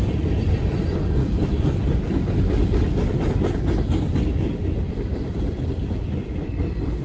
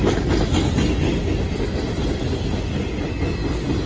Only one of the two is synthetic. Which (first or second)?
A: first